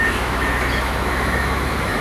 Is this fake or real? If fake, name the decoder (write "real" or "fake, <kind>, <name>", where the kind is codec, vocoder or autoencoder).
fake, autoencoder, DAC-VAE